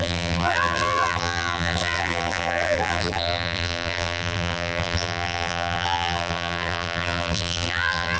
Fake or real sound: fake